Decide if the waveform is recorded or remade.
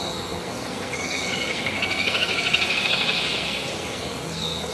remade